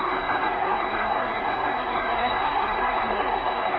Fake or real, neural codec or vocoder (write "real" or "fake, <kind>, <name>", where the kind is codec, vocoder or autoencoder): fake, codec, SNAC